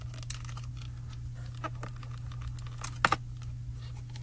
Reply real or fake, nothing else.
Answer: real